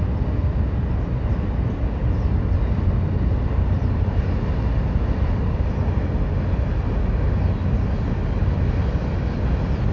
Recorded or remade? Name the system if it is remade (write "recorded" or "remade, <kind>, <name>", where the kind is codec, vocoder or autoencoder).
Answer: recorded